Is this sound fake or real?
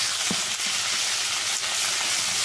real